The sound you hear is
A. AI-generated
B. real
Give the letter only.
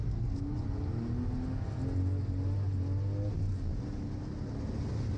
B